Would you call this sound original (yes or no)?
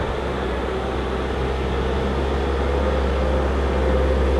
yes